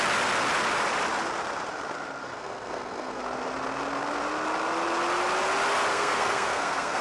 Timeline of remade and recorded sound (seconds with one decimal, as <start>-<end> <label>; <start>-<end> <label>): 0.0-2.2 recorded; 2.2-3.2 remade; 3.2-5.9 recorded; 5.9-7.0 remade